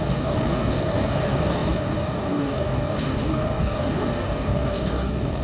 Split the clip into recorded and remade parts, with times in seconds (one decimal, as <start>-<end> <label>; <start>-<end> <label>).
0.0-5.4 remade